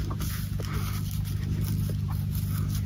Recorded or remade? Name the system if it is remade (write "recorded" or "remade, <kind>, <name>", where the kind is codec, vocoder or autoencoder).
recorded